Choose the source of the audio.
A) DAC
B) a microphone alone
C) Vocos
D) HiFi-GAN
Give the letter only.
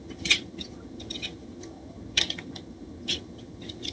D